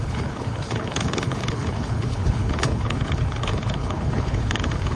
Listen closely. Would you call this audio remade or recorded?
remade